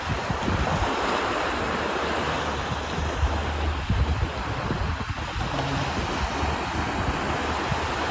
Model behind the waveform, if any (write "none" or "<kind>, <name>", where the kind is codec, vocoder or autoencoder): none